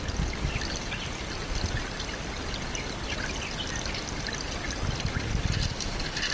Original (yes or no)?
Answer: yes